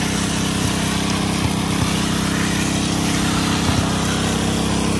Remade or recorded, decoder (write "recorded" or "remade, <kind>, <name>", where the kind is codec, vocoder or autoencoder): recorded